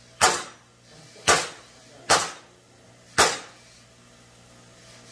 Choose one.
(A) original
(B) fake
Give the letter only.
A